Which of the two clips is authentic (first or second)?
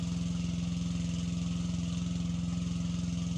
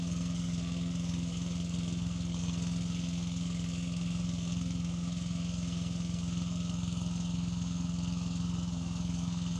first